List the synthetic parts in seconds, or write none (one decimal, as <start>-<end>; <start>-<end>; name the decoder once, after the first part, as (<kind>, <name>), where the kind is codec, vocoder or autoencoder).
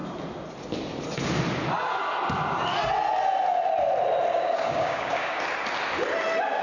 4.3-5.4 (codec, DAC)